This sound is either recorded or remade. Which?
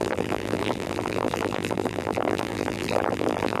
remade